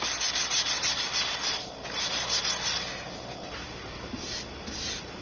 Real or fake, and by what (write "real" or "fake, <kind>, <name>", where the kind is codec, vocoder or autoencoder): real